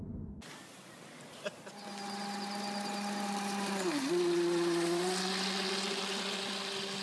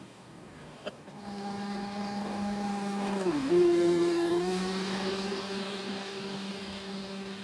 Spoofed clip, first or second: second